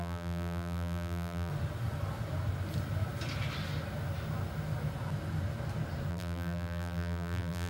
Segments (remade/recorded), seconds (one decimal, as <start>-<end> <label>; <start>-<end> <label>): 0.0-1.5 remade; 1.5-6.1 recorded; 6.1-7.7 remade